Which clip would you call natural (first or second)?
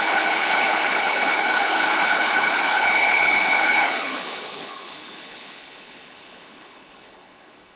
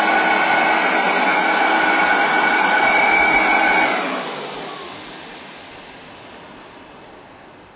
second